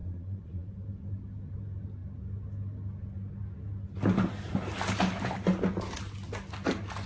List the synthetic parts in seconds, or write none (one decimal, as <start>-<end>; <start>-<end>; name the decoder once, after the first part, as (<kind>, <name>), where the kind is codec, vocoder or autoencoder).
0.0-0.7 (vocoder, Vocos)